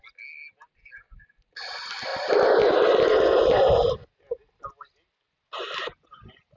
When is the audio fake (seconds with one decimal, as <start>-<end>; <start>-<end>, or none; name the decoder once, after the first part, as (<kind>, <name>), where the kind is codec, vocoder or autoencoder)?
none